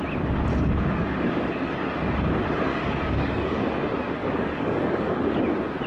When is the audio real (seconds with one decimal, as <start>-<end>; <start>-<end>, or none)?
0.0-0.5; 1.5-2.7; 3.7-4.2; 5.4-5.9